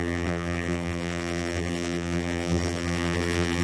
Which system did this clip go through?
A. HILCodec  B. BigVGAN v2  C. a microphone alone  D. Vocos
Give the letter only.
B